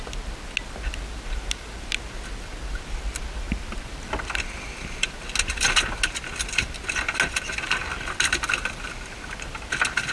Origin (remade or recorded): recorded